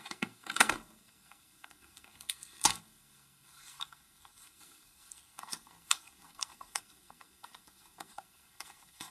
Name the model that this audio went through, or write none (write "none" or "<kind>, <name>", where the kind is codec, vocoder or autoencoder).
codec, SNAC